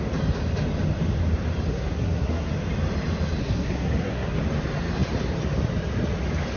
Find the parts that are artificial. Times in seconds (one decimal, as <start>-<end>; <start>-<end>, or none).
1.7-2.5; 3.4-4.4